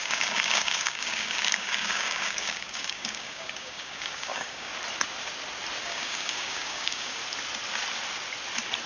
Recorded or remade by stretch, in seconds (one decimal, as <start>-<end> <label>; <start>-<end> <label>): 0.0-4.7 remade; 4.7-5.8 recorded; 5.8-7.2 remade; 7.2-8.9 recorded